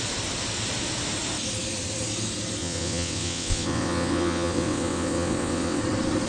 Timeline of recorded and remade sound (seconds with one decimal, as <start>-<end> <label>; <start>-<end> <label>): 0.0-2.6 recorded; 2.6-5.8 remade; 5.8-6.3 recorded